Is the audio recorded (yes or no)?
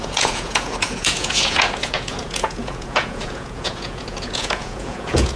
no